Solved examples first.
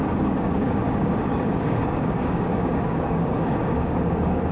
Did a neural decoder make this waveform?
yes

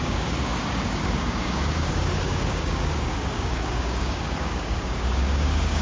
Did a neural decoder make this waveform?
yes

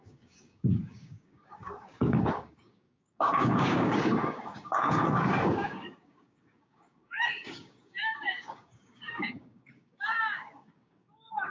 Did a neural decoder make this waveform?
yes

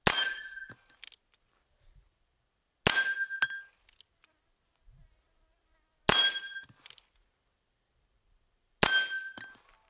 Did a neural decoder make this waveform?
no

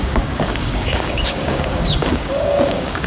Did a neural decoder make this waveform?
yes